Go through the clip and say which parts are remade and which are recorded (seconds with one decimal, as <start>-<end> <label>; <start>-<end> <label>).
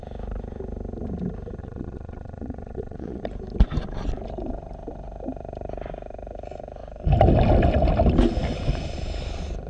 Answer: 0.0-1.6 recorded; 1.6-3.2 remade; 3.2-9.7 recorded